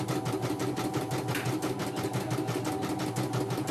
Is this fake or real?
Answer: real